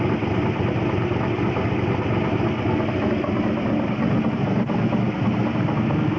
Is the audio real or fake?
real